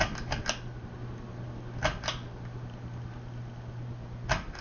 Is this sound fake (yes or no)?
no